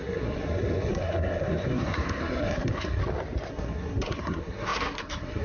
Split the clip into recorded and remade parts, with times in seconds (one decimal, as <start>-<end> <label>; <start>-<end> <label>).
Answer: 0.0-3.0 remade; 3.0-3.5 recorded; 3.5-5.4 remade